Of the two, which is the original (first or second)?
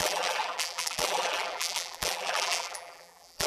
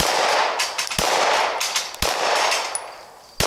second